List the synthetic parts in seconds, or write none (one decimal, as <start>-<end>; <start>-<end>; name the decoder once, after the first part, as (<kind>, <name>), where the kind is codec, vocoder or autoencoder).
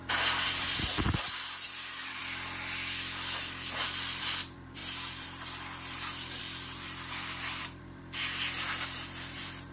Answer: 0.0-2.2 (vocoder, BigVGAN v2); 3.4-9.7